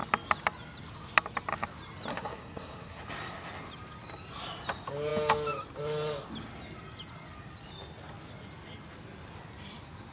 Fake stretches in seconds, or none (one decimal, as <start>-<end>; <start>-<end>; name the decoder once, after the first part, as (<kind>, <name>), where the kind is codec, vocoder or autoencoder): 2.1-3.0 (codec, SNAC)